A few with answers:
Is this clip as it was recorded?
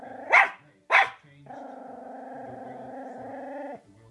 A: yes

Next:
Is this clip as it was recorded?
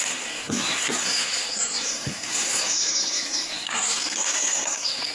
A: no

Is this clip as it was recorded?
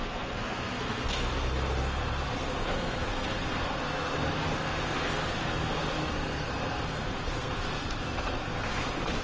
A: no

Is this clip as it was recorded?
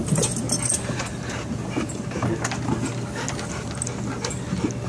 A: yes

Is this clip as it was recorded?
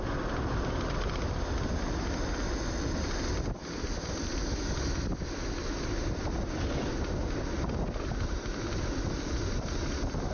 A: yes